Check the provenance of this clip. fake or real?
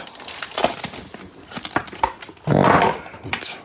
real